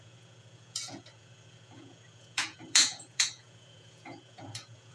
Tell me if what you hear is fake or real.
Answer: fake